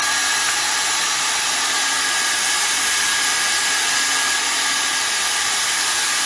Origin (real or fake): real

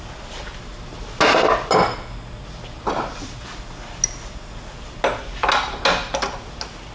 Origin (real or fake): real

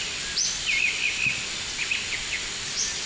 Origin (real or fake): real